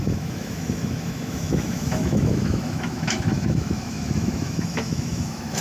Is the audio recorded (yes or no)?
no